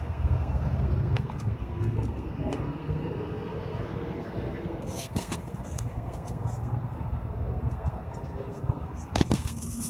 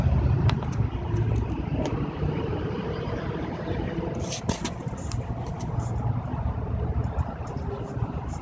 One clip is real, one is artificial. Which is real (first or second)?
second